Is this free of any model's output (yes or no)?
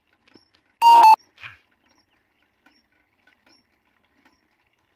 yes